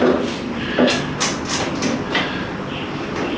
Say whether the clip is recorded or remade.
recorded